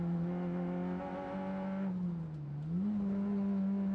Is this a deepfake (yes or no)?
no